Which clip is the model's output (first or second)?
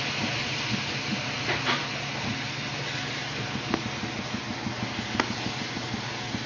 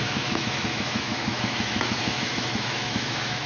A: second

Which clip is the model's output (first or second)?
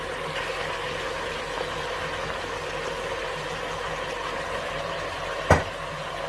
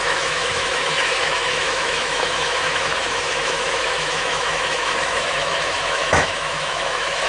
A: second